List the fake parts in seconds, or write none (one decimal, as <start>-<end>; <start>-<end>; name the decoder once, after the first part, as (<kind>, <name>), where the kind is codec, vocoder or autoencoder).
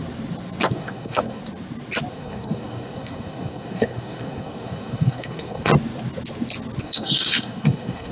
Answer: 0.7-1.4 (codec, SNAC); 2.1-5.7; 6.8-8.1